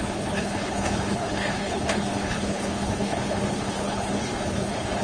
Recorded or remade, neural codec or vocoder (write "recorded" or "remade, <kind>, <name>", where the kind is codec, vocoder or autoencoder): remade, codec, HILCodec